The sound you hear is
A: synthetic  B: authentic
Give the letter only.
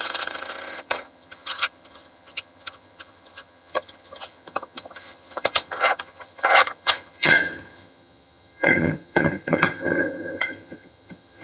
A